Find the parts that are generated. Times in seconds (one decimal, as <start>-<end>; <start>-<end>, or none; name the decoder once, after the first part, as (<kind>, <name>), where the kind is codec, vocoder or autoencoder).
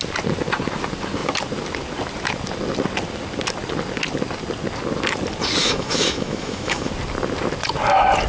5.6-6.9 (autoencoder, DAC-VAE)